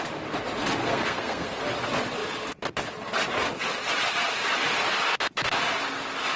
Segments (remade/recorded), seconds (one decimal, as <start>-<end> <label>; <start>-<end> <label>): 0.0-0.8 recorded; 0.8-1.6 remade; 1.6-6.4 recorded